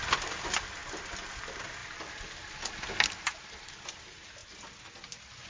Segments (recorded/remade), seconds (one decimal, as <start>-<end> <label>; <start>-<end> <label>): 0.0-5.5 recorded